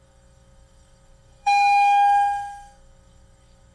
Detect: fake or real fake